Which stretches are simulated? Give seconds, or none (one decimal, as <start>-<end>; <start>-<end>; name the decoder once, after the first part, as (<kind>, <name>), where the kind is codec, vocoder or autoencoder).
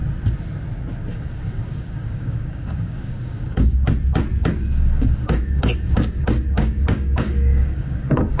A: 1.1-3.9 (codec, DAC); 4.4-8.4